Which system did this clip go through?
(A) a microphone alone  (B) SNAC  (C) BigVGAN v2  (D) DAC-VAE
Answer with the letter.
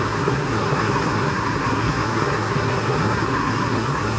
B